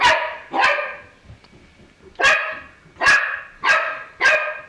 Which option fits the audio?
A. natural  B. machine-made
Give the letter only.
A